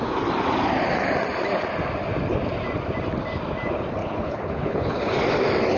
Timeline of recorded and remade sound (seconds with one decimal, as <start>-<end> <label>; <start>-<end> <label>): 0.0-4.0 recorded; 4.0-5.1 remade; 5.1-5.8 recorded